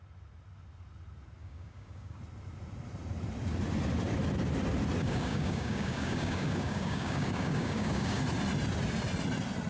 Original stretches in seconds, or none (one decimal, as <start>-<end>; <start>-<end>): 0.0-1.4; 2.2-5.0; 8.2-9.7